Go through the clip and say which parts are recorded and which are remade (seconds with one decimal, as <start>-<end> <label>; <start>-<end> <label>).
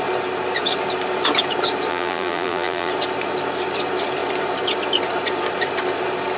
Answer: 0.0-1.9 recorded; 1.9-2.9 remade; 2.9-6.4 recorded